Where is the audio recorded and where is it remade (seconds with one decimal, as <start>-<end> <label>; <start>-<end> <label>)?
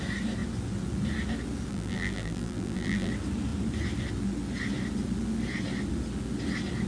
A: 0.0-1.7 recorded; 1.7-3.1 remade; 3.1-6.9 recorded